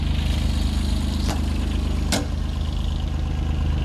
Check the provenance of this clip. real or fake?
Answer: real